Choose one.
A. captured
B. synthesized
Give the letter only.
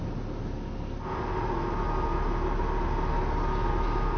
A